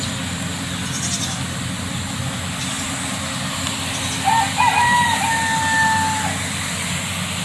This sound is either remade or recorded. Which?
recorded